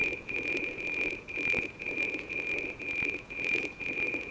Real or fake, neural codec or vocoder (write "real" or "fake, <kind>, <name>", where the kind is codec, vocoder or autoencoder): fake, vocoder, Vocos